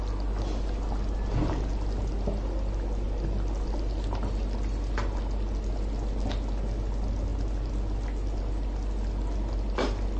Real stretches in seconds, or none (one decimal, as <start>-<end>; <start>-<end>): 0.0-10.2